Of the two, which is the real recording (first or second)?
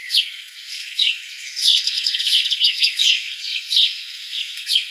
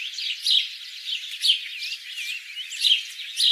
second